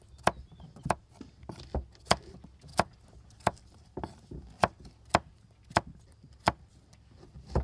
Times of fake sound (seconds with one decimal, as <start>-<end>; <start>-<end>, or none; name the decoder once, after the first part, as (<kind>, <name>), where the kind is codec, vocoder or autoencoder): none